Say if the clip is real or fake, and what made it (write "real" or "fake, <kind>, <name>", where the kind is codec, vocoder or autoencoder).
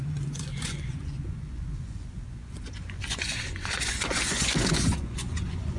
fake, vocoder, Vocos